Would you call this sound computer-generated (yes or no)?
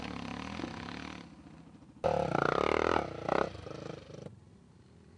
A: no